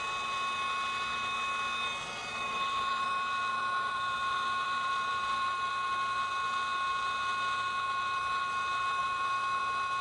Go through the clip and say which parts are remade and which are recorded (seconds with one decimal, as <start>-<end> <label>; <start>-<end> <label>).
0.0-2.2 recorded; 2.2-5.7 remade; 5.7-9.0 recorded; 9.0-9.6 remade; 9.6-10.0 recorded